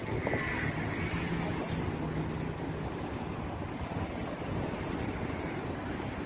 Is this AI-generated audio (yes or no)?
no